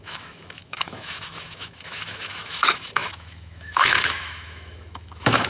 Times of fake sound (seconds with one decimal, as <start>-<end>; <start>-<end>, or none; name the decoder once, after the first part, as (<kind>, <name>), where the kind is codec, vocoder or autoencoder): 0.0-5.5 (autoencoder, DAC-VAE)